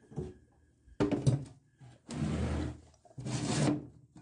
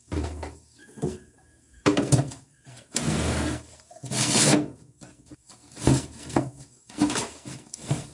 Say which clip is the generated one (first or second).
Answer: second